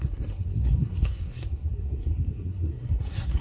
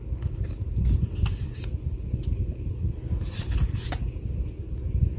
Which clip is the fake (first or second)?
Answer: first